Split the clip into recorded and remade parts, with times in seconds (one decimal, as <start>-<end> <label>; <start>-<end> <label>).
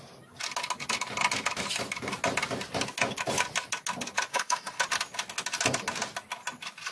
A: 0.0-4.3 recorded; 4.3-4.8 remade; 4.8-6.9 recorded